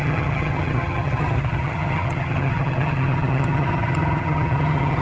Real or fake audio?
fake